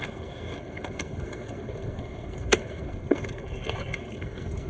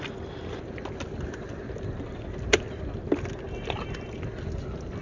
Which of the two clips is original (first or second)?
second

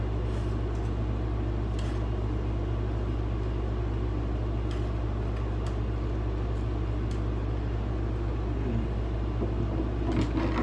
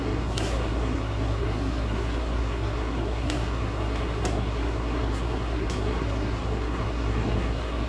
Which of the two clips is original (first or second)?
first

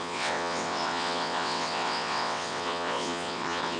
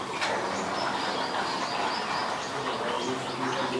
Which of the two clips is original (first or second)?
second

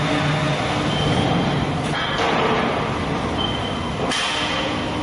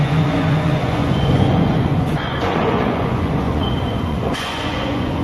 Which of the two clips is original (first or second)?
first